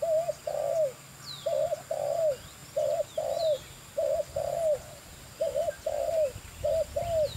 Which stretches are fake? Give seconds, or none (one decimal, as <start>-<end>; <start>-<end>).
2.6-3.4; 4.7-5.3